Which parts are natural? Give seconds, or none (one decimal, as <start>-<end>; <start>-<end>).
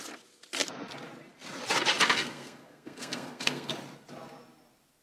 0.0-2.2; 3.7-5.0